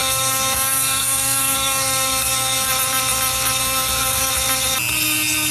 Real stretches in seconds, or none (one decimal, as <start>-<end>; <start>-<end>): 2.7-3.6; 4.3-5.5